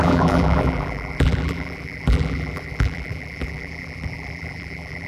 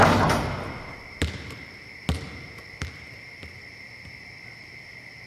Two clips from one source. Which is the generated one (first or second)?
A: first